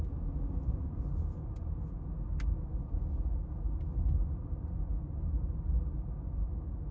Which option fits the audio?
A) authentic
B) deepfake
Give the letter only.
A